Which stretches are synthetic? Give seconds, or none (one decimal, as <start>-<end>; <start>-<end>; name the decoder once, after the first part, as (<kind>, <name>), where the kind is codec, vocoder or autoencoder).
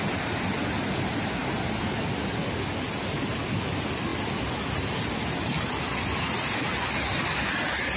none